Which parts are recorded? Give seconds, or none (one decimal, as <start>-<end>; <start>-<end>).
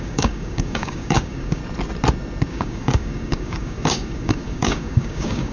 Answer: 1.6-2.5